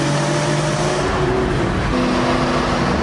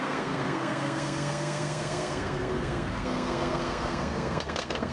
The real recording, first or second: first